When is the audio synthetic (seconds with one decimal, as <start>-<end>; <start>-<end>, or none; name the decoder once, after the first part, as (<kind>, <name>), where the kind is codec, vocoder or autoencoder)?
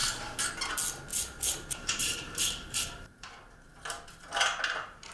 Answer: 1.1-3.3 (vocoder, BigVGAN v2)